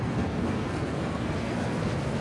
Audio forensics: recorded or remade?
remade